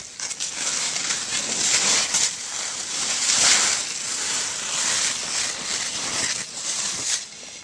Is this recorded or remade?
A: recorded